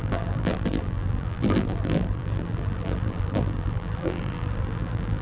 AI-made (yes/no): yes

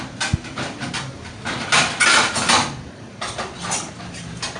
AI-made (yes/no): no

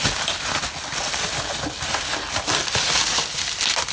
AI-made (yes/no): no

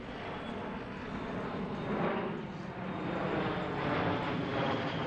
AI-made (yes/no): no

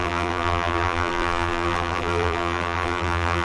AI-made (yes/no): yes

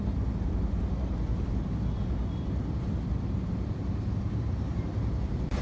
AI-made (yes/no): yes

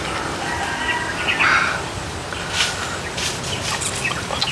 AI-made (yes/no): no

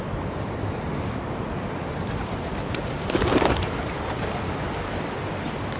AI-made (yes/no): yes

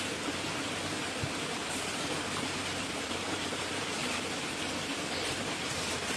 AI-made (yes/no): no